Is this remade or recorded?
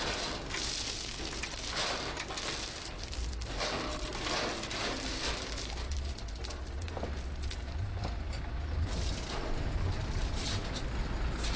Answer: recorded